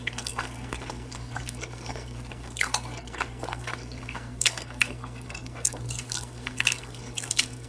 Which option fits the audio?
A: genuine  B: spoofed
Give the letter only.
B